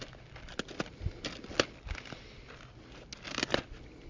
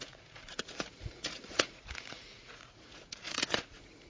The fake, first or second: second